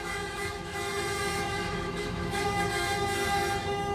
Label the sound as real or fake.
fake